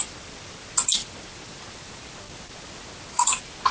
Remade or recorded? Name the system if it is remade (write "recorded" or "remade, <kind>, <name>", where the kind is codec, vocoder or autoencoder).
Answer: recorded